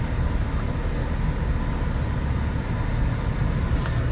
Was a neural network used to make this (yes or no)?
no